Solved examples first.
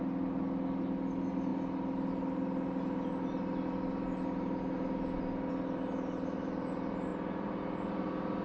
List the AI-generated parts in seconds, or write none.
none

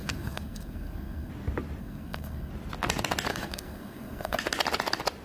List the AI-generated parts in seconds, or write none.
0.0-1.3; 1.8-2.5; 3.3-4.4

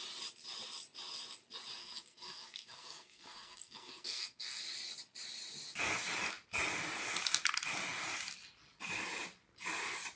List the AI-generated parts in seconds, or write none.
1.8-4.6

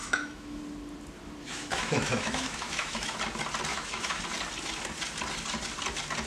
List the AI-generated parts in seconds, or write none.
0.0-0.6; 1.4-3.2; 3.7-4.2

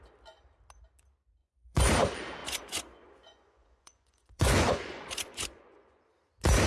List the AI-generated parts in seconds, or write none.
1.4-1.9; 2.4-6.0

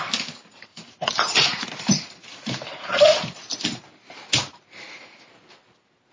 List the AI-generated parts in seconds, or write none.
0.7-4.0